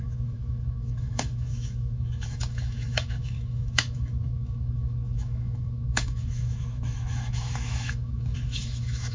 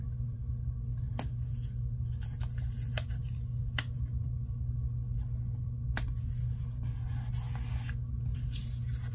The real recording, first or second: second